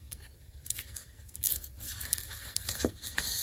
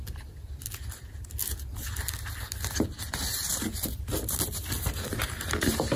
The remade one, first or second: first